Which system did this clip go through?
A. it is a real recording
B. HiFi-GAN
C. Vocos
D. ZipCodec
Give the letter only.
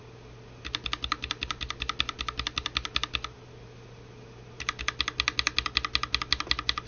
A